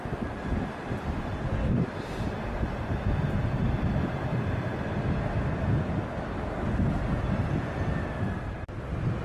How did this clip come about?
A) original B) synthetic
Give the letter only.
A